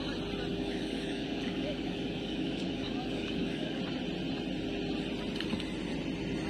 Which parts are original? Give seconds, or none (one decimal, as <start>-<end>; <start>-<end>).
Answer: 0.0-0.5; 3.8-6.5